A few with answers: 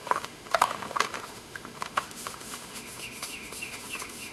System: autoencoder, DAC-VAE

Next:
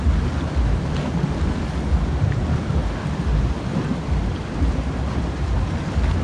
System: none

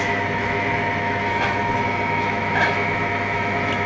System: autoencoder, DAC-VAE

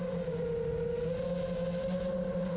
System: none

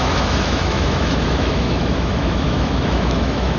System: autoencoder, DAC-VAE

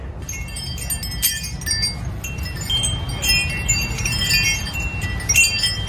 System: none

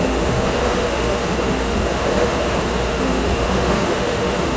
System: autoencoder, DAC-VAE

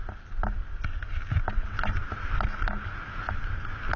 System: none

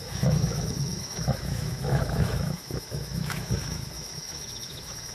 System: autoencoder, DAC-VAE